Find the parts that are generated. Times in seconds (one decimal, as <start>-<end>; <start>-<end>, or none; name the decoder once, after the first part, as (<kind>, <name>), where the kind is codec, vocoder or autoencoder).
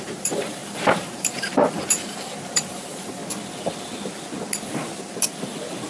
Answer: 0.0-3.2 (vocoder, BigVGAN v2)